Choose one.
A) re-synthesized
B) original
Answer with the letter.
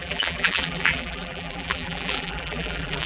A